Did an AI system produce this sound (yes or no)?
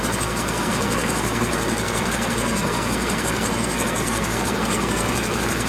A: yes